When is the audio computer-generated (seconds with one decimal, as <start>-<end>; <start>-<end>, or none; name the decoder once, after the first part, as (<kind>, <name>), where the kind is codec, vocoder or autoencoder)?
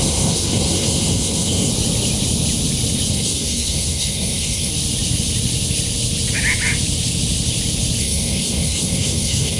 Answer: 0.0-1.7 (codec, SNAC); 3.1-4.7; 8.0-9.6